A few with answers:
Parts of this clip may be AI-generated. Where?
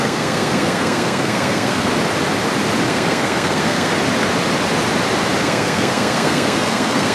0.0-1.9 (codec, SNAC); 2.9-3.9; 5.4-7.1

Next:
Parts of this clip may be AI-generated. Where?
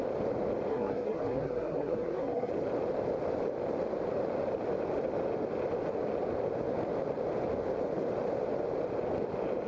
0.7-2.5 (codec, SNAC)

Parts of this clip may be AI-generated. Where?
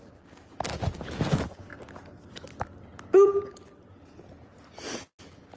none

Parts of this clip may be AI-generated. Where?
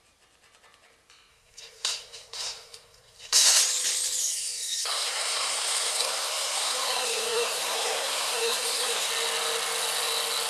1.3-3.6 (codec, SNAC); 4.2-9.1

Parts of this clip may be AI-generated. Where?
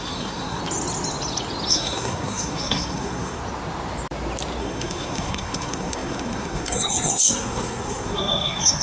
0.0-0.6 (codec, SNAC); 1.7-3.4; 4.6-8.8